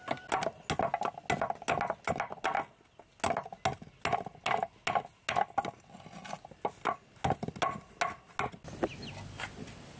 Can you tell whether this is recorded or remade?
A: recorded